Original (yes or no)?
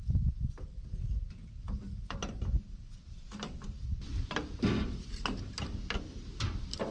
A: yes